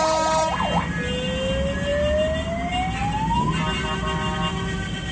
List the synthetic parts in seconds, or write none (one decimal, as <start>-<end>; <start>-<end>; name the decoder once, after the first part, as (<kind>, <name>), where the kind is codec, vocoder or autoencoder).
none